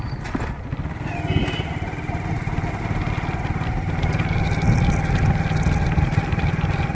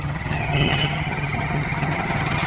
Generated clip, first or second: second